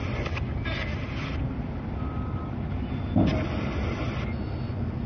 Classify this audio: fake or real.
real